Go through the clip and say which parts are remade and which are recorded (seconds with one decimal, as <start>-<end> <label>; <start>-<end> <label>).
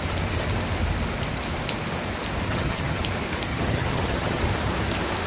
0.0-2.5 recorded; 2.5-3.0 remade; 3.0-3.5 recorded; 3.5-4.4 remade; 4.4-5.3 recorded